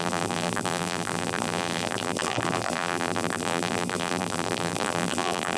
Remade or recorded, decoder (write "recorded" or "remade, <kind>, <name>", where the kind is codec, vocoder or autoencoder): remade, vocoder, BigVGAN v2